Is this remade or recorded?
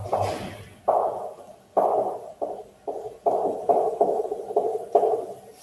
recorded